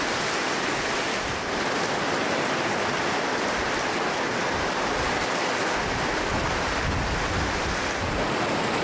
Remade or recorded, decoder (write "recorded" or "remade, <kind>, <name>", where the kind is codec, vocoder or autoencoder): recorded